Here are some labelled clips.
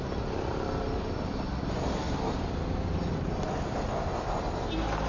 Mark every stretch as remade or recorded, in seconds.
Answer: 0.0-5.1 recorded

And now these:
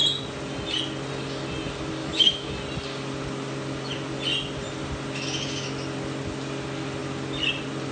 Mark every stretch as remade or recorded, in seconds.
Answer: 0.0-2.0 recorded; 2.0-2.5 remade; 2.5-7.9 recorded

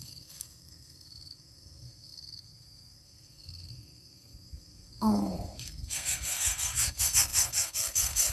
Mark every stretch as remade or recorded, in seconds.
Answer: 0.0-8.3 remade

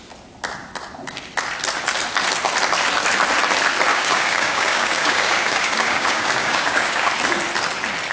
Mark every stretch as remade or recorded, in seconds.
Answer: 0.0-3.9 recorded; 3.9-7.1 remade; 7.1-8.1 recorded

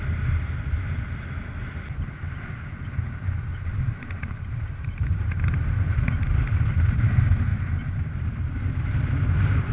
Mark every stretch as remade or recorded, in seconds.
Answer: 0.0-3.5 recorded; 3.5-5.4 remade; 5.4-9.7 recorded